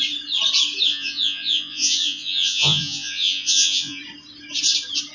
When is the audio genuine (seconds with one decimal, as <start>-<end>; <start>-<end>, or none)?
0.0-0.9; 4.0-5.1